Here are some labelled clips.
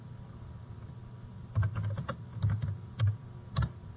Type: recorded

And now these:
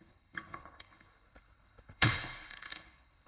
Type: remade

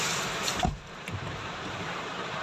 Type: remade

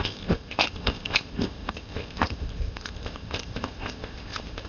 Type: remade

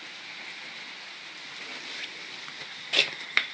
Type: recorded